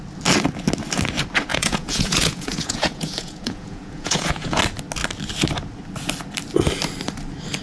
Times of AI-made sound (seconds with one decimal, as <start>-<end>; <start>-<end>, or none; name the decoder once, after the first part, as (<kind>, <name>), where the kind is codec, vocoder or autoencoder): 1.5-4.6 (vocoder, Vocos)